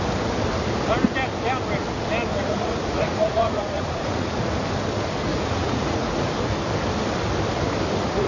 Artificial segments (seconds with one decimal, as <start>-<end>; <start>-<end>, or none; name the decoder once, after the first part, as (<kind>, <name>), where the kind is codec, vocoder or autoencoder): 2.3-4.4 (vocoder, Vocos); 5.3-6.3